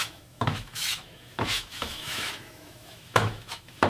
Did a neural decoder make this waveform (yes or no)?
yes